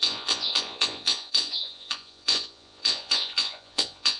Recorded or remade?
remade